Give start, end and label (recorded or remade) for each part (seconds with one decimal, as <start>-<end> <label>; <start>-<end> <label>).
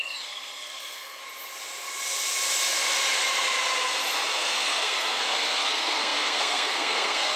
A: 0.0-1.2 remade; 1.2-4.3 recorded; 4.3-7.4 remade